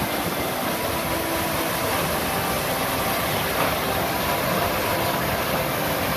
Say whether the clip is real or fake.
real